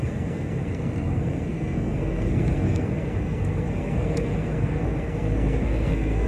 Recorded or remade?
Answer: remade